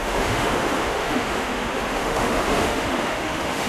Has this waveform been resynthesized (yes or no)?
yes